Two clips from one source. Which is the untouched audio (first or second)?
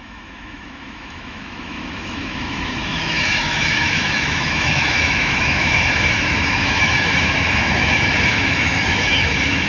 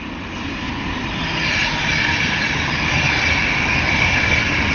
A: second